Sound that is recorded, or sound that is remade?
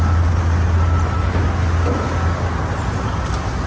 recorded